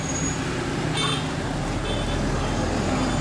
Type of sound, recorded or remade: recorded